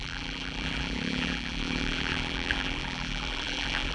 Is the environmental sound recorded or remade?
remade